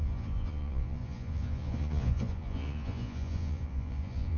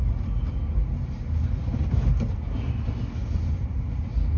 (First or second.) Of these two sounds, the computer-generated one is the first